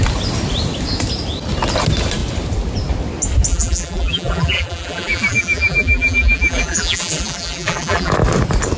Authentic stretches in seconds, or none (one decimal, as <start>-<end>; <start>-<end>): 0.0-3.5; 8.1-8.8